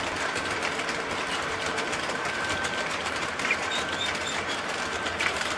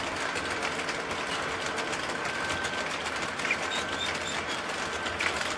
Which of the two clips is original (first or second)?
second